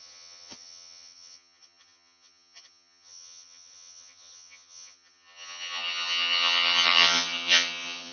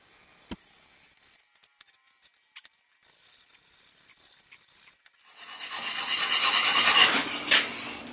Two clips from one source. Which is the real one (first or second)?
second